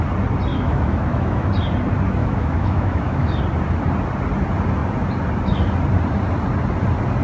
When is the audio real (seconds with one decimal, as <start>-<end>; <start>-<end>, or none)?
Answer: 0.0-0.5; 1.5-2.2; 3.4-7.2

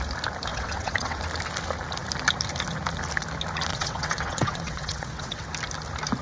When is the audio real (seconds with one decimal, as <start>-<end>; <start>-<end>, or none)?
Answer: 0.0-0.5; 1.2-3.7; 5.5-6.2

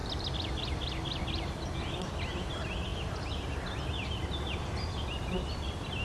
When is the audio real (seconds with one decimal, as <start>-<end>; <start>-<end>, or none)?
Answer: 0.0-6.0